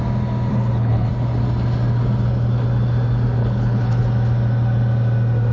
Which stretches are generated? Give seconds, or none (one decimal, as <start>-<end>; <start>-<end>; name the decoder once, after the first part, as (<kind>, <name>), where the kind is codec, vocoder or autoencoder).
0.5-1.1 (codec, HILCodec); 3.4-4.0